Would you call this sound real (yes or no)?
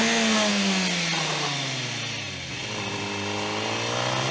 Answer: yes